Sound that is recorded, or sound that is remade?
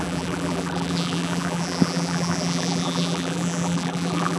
remade